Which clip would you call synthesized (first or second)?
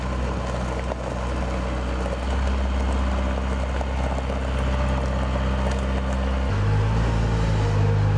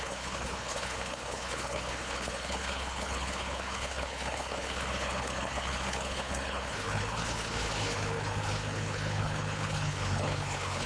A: second